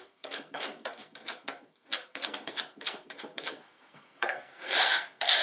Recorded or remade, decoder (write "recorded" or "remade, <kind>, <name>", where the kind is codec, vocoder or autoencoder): remade, codec, SNAC